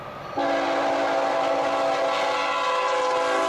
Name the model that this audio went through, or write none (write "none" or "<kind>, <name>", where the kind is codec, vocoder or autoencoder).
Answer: none